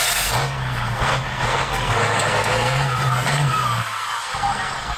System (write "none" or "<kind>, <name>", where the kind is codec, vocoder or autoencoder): codec, SNAC